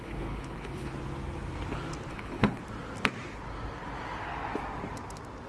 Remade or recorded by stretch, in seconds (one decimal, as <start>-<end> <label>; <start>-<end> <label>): 0.0-0.9 remade; 0.9-2.1 recorded; 2.1-2.6 remade; 2.6-5.5 recorded